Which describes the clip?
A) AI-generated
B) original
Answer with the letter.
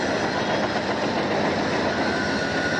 B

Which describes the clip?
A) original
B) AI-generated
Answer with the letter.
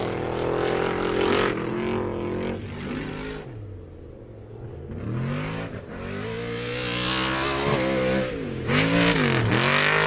A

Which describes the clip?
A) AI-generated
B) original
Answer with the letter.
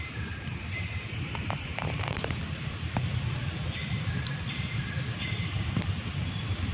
A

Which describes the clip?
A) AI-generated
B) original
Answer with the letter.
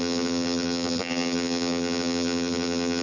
A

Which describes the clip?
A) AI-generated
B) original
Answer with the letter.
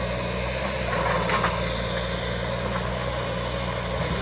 B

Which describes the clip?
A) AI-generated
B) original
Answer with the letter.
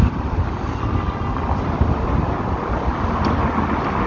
B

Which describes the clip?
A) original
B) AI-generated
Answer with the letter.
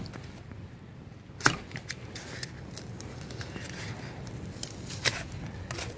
A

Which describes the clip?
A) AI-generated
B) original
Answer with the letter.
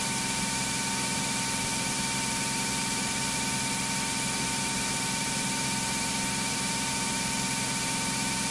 B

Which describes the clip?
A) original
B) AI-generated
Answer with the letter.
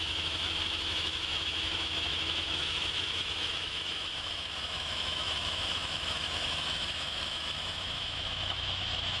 B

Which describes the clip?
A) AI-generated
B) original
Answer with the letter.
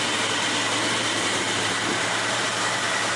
A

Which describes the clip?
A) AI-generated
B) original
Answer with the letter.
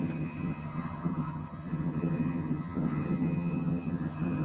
A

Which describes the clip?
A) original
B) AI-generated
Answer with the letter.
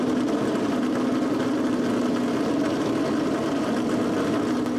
A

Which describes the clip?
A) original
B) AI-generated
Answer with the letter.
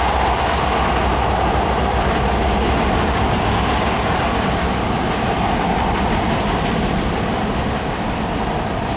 A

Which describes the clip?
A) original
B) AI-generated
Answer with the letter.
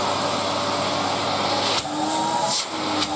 A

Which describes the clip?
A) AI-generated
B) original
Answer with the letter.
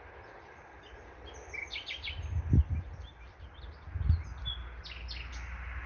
B